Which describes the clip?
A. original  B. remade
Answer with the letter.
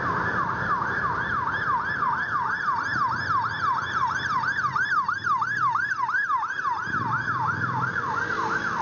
A